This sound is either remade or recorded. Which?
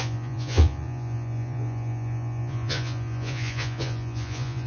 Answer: remade